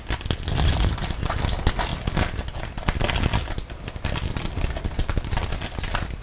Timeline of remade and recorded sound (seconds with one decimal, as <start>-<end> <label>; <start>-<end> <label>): 0.0-6.2 recorded